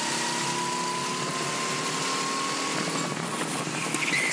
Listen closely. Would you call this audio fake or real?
real